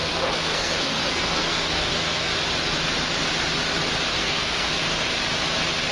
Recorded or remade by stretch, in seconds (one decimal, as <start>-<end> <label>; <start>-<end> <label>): 0.0-2.3 remade; 2.3-4.1 recorded; 4.1-4.7 remade; 4.7-5.9 recorded